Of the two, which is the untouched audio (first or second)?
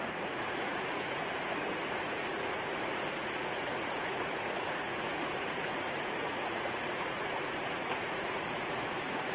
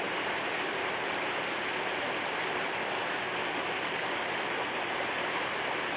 second